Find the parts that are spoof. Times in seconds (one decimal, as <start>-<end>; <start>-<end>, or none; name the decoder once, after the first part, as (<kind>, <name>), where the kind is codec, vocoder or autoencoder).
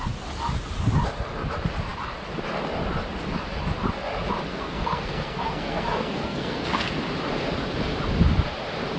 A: 4.5-6.9 (codec, SNAC)